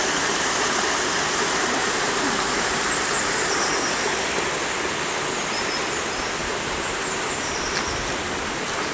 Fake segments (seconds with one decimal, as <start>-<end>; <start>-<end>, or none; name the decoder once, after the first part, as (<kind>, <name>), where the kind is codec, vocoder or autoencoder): 0.0-0.6 (vocoder, BigVGAN v2); 1.8-3.4; 6.4-7.6